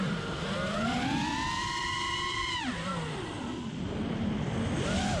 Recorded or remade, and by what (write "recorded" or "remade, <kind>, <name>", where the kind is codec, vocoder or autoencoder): remade, vocoder, BigVGAN v2